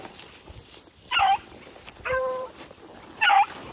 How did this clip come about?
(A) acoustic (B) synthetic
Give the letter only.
B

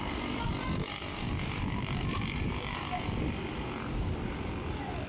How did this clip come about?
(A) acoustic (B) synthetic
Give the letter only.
A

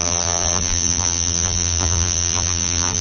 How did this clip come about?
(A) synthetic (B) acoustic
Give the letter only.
A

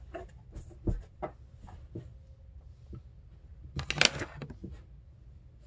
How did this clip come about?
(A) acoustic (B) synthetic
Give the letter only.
A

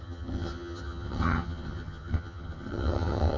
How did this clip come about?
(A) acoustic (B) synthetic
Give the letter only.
B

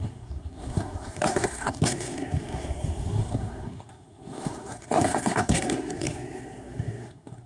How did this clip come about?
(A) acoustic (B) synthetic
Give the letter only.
B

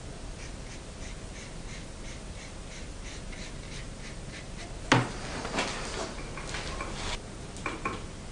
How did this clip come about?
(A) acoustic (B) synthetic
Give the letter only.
A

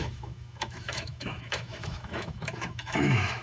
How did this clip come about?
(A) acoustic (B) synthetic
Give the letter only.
B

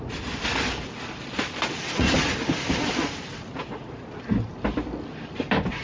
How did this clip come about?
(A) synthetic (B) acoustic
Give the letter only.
B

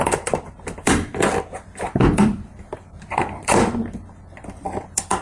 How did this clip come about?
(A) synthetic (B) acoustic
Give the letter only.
A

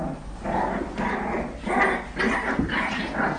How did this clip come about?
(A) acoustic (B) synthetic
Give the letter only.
A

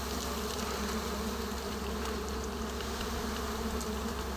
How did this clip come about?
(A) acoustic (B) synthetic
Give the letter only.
A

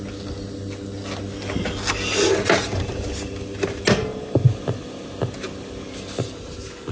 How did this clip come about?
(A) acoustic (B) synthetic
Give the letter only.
A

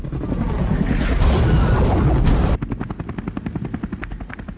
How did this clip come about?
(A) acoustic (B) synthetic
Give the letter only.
A